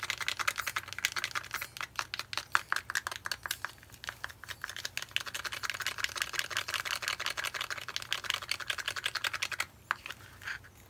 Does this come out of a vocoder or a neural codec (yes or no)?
no